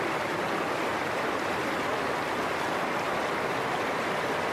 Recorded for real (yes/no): yes